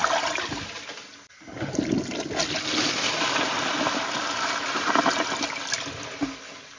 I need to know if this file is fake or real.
real